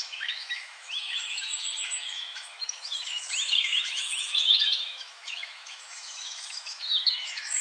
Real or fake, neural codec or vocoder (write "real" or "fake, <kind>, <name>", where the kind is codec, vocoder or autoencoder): fake, autoencoder, DAC-VAE